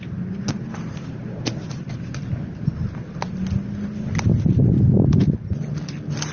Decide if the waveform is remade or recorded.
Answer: recorded